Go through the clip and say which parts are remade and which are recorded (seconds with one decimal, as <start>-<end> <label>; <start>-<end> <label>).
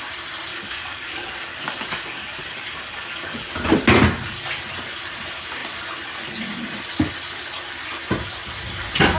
0.0-0.5 recorded; 0.5-3.5 remade; 3.5-9.2 recorded